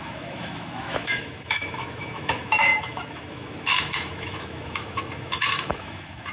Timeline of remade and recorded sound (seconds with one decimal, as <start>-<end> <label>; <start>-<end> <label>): 0.0-6.3 remade